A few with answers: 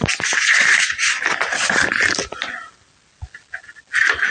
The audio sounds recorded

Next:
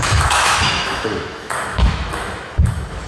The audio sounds remade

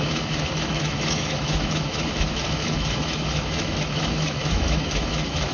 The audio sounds remade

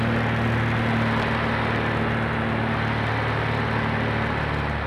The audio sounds recorded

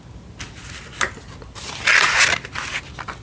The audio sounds recorded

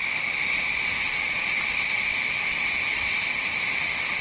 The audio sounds recorded